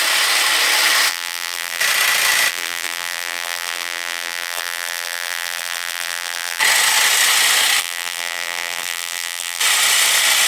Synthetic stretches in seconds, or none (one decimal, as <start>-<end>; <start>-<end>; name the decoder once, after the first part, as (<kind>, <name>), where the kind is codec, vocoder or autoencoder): 1.1-1.8 (vocoder, BigVGAN v2); 2.5-6.6; 7.8-9.6